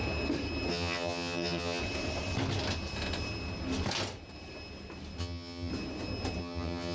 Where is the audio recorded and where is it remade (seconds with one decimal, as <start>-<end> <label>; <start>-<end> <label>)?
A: 0.0-0.7 recorded; 0.7-1.8 remade; 1.8-5.2 recorded; 5.2-5.7 remade; 5.7-6.4 recorded; 6.4-6.9 remade